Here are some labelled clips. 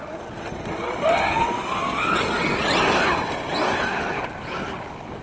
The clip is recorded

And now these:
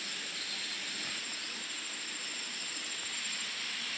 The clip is recorded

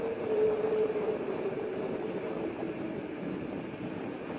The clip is remade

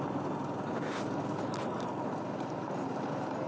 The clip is recorded